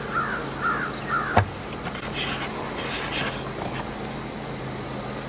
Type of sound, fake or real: real